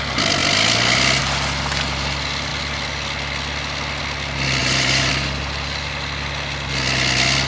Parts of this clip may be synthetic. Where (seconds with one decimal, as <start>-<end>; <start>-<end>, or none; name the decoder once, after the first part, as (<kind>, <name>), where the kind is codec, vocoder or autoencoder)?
4.6-5.1 (vocoder, BigVGAN v2)